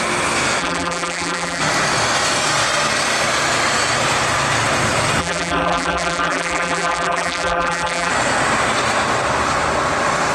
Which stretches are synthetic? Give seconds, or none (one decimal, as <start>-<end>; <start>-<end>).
0.6-1.6; 5.2-8.1